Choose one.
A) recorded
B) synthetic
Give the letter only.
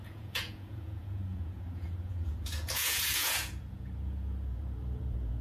B